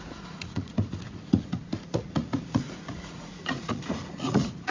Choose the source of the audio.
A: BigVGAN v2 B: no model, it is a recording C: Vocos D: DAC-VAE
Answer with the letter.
C